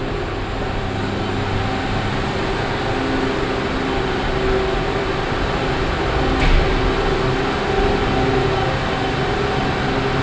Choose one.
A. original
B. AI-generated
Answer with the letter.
A